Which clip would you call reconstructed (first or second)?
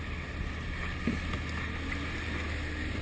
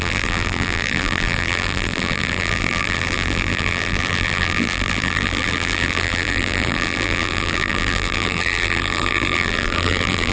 second